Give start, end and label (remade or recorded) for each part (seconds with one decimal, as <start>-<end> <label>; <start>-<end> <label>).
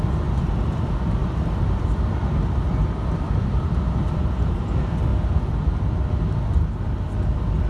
0.0-7.7 remade